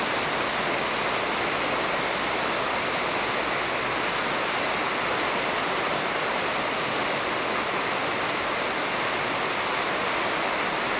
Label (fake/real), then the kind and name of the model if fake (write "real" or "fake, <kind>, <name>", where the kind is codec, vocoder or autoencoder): real